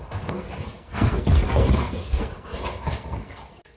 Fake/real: fake